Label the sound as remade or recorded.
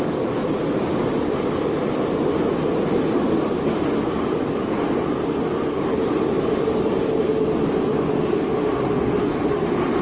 recorded